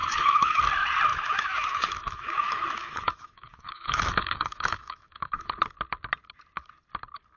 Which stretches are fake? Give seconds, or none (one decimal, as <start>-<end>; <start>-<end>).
0.0-0.6; 1.1-5.5